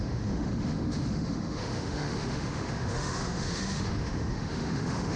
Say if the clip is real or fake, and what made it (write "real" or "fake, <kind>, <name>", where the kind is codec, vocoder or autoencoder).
fake, autoencoder, DAC-VAE